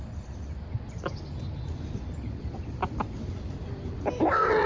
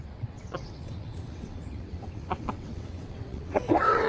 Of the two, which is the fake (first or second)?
second